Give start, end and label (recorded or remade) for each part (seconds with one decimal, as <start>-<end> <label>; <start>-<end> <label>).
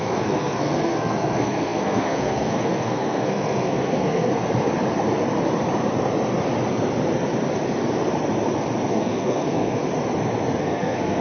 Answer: 0.0-4.3 remade; 4.3-8.9 recorded; 8.9-9.8 remade; 9.8-10.6 recorded; 10.6-11.2 remade